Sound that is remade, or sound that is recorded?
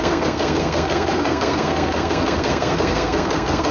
remade